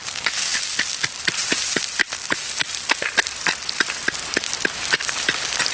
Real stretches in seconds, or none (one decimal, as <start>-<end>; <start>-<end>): 0.0-5.7